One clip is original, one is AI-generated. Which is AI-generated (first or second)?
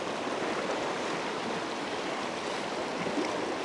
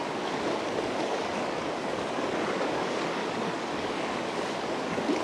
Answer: second